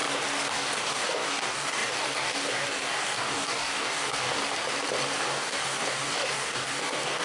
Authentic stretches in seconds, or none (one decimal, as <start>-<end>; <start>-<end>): 0.0-0.5; 4.4-5.2